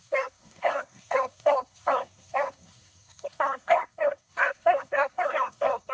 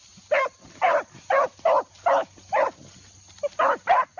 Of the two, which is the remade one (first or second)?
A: first